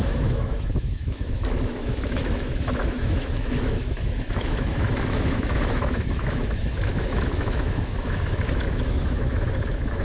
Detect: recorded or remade remade